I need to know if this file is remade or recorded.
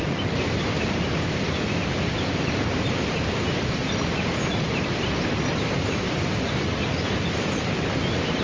remade